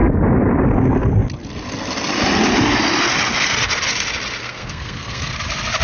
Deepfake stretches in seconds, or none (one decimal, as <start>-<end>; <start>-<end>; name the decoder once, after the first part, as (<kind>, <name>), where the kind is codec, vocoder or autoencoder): 4.4-5.3 (codec, SNAC)